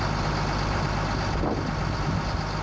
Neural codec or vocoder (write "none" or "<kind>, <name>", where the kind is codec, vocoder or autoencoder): none